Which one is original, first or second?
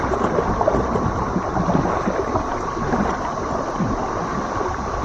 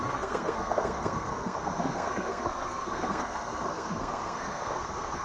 first